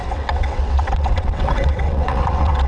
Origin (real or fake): fake